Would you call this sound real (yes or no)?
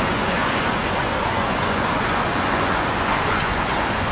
no